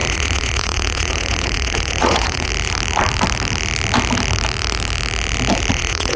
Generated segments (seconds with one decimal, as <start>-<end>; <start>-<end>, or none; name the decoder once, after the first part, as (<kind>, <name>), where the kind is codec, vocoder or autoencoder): 0.0-2.5 (vocoder, Vocos); 5.7-6.2